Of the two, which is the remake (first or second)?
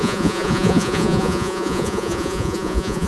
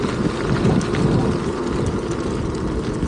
first